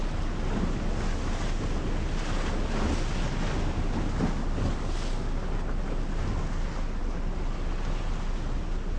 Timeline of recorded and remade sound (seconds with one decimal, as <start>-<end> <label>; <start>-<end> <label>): 0.0-9.0 recorded